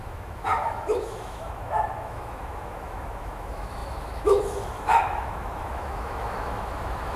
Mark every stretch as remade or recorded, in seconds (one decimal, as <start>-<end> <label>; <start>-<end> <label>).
0.0-7.2 remade